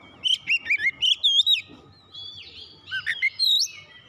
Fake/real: real